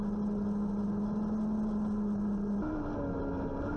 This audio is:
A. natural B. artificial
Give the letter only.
A